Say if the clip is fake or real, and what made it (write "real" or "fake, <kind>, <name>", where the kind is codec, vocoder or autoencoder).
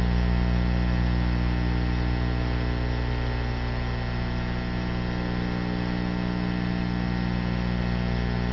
real